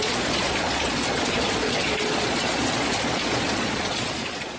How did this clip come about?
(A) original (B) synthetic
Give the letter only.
B